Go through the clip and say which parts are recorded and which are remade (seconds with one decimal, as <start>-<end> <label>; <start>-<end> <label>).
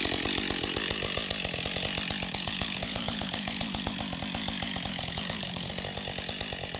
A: 0.0-2.3 recorded; 2.3-4.0 remade; 4.0-4.9 recorded; 4.9-5.7 remade; 5.7-6.8 recorded